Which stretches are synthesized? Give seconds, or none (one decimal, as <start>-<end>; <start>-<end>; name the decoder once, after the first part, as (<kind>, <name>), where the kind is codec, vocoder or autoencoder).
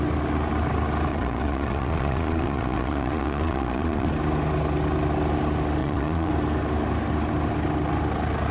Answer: 1.1-4.1 (vocoder, Vocos); 5.8-6.3